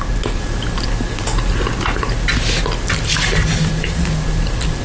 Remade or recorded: recorded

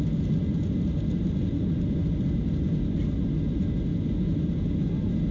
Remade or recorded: recorded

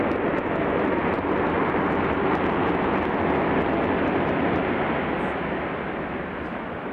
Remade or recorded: recorded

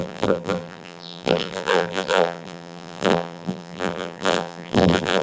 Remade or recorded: remade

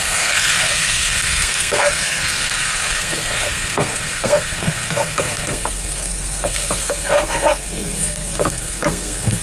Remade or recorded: remade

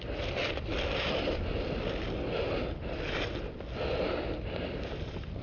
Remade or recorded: recorded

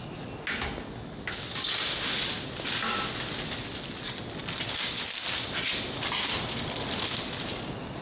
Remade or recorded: recorded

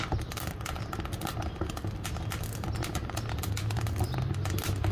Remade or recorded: recorded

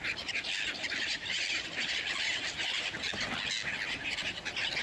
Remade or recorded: recorded